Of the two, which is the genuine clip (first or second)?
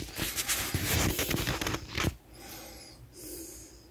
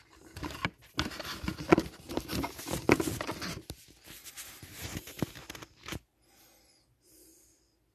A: second